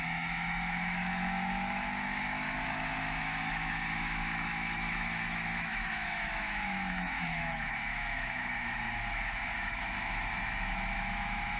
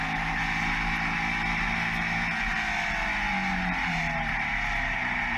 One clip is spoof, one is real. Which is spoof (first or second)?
first